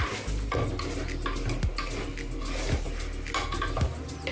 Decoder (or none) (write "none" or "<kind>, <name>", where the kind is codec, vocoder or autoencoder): none